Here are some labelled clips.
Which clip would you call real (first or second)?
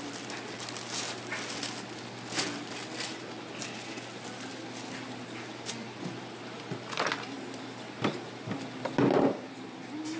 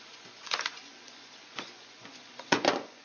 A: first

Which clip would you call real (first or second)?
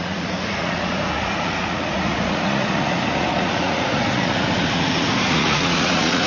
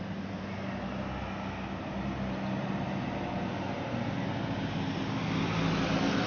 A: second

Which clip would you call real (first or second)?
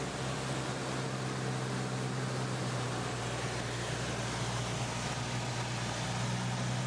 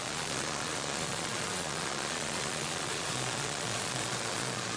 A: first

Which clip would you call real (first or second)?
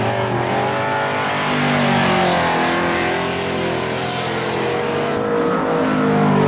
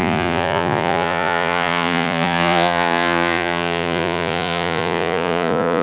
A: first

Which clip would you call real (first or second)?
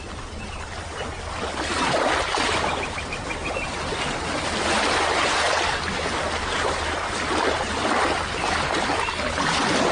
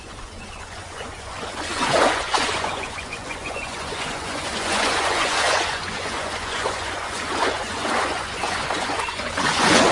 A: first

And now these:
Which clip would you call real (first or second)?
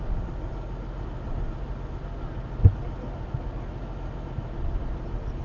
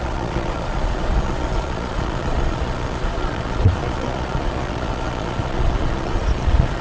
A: first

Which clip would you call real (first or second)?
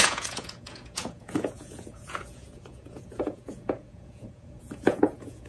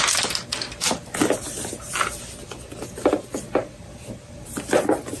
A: second